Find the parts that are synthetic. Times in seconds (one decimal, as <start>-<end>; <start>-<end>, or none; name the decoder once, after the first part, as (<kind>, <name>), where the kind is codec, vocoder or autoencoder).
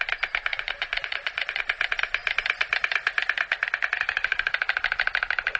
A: 0.5-1.6 (vocoder, Vocos)